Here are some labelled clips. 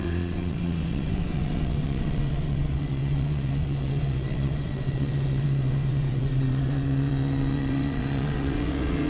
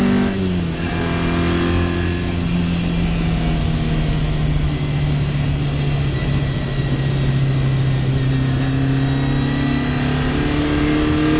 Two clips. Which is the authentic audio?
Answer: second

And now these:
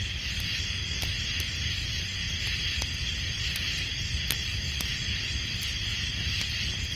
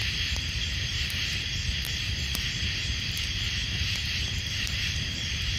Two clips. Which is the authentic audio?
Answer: first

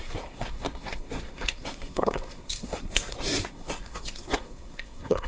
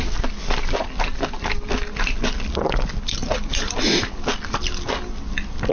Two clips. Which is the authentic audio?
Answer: second